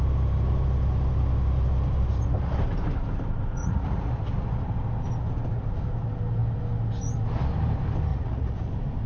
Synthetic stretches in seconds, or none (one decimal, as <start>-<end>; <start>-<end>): 3.6-4.1; 8.1-8.7